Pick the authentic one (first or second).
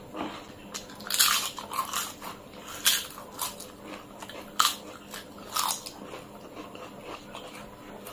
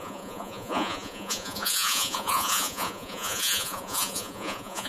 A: first